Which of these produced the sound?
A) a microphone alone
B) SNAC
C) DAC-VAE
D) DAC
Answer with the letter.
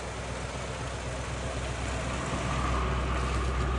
A